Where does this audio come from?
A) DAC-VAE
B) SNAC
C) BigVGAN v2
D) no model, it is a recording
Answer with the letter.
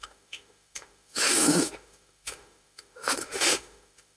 A